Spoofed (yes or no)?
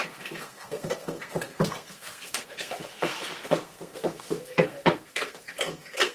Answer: yes